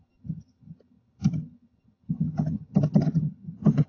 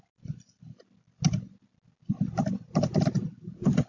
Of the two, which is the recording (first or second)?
second